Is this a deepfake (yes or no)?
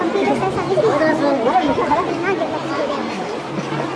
no